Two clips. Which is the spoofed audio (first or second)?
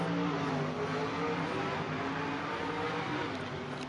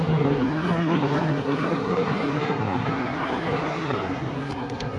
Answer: second